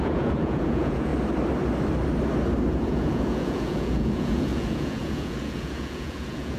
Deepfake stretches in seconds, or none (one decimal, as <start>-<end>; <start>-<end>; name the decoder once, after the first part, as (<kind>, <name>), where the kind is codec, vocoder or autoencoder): 0.0-1.1 (vocoder, Vocos); 2.7-6.6